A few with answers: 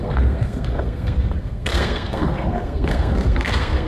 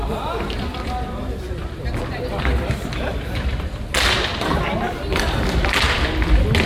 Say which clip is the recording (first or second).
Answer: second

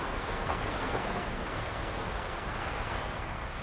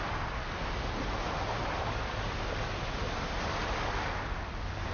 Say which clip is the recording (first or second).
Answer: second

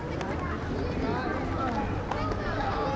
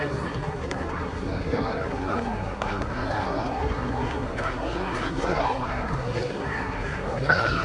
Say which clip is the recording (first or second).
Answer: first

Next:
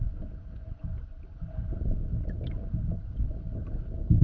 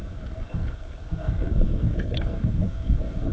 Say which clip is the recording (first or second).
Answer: first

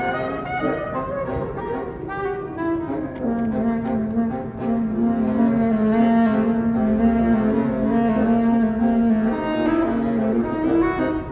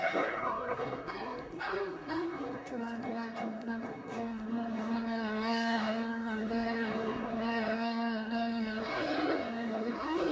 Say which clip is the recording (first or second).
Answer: first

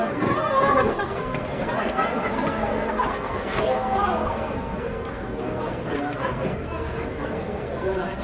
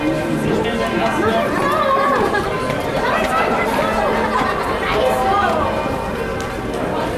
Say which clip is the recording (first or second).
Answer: second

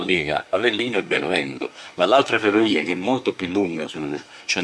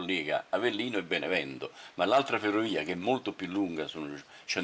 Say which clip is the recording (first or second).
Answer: second